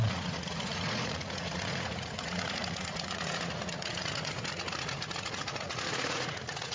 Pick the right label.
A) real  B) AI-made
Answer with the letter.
B